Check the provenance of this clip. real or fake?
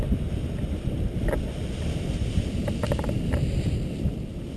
real